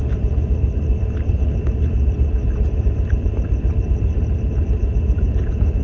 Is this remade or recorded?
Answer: remade